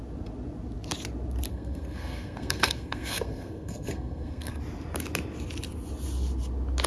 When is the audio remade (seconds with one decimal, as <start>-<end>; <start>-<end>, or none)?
1.5-4.6